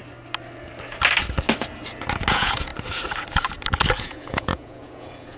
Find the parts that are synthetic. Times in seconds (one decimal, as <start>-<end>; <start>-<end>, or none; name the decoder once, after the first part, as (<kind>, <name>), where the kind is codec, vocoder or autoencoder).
2.3-2.7 (vocoder, Vocos); 4.0-5.4